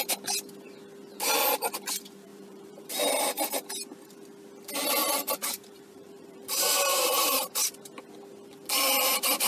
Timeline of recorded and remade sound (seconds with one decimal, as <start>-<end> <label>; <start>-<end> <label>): 0.0-2.3 recorded; 2.3-3.1 remade; 3.1-5.2 recorded; 5.2-7.5 remade; 7.5-9.5 recorded